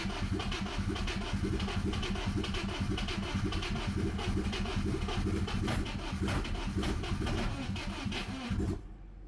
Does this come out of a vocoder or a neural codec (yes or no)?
no